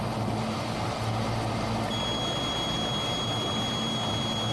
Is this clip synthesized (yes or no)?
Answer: no